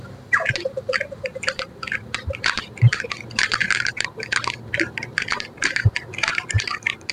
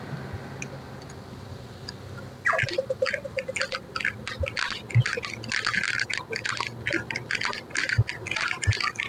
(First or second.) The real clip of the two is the second